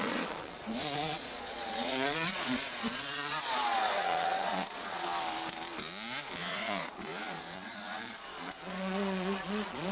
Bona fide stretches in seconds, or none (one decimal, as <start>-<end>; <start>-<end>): 5.1-6.4